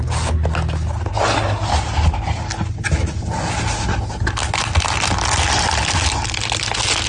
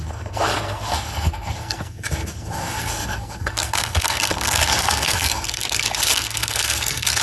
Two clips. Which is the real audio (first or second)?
first